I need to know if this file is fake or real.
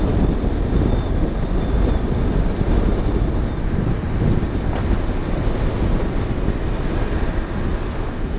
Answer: real